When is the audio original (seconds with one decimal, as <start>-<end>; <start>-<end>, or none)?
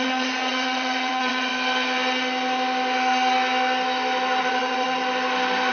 1.5-4.4; 5.0-5.7